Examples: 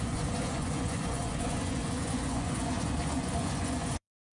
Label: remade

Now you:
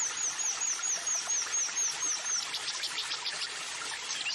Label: recorded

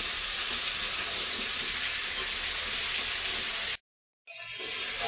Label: recorded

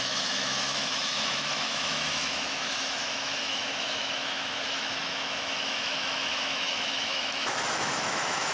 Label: remade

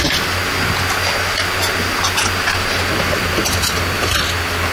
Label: recorded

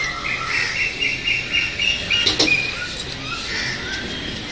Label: recorded